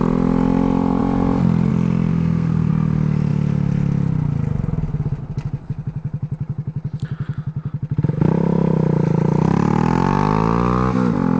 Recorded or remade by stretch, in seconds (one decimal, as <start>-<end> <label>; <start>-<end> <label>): 0.0-2.1 recorded; 2.1-2.7 remade; 2.7-11.4 recorded